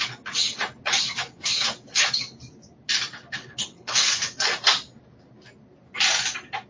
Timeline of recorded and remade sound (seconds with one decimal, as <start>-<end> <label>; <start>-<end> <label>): 0.0-3.4 recorded; 3.4-4.1 remade; 4.1-6.7 recorded